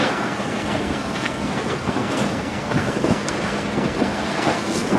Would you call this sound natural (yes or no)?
no